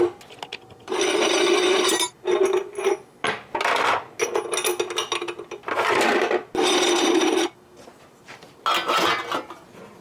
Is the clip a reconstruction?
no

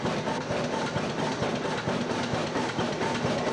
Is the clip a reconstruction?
no